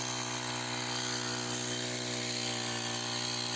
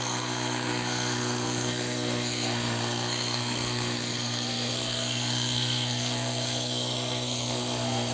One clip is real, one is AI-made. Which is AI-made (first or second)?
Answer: second